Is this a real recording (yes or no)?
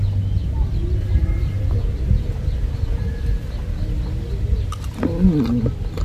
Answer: yes